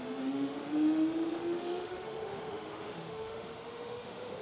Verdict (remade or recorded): remade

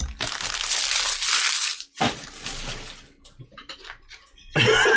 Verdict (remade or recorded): recorded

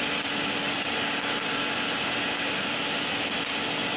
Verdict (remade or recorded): recorded